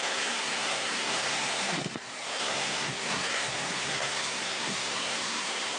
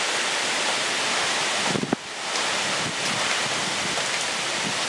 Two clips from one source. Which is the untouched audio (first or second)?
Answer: second